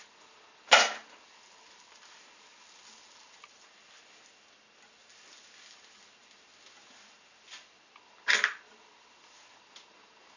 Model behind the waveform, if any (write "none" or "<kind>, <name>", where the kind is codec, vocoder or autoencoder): none